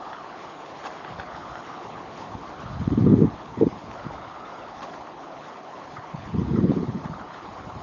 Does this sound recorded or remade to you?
remade